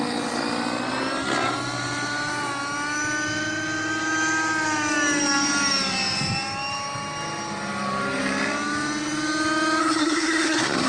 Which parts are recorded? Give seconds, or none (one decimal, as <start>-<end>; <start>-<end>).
0.0-9.8